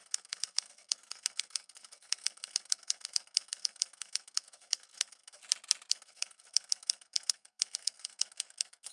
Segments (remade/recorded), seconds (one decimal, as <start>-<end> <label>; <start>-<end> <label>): 0.0-5.4 remade; 5.4-5.9 recorded; 5.9-8.9 remade